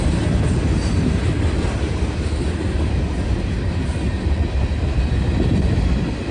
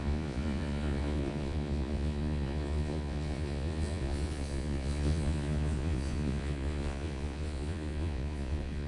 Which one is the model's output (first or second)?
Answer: second